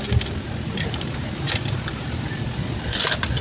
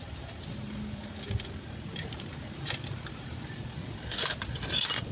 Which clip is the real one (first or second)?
first